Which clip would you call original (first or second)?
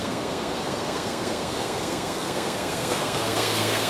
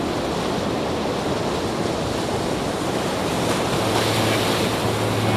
second